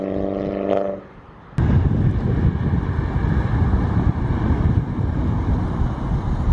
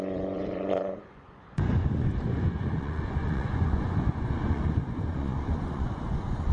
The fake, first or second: second